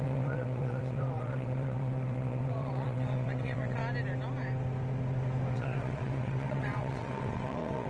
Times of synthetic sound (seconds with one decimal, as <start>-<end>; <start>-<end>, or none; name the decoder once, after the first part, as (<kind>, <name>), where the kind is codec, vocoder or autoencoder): 0.0-3.8 (vocoder, WaveNeXt); 5.5-7.9